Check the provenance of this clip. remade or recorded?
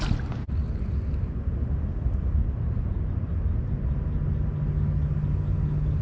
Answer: recorded